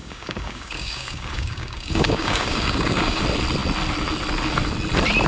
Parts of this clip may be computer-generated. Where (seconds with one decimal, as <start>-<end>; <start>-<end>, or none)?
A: 0.0-3.2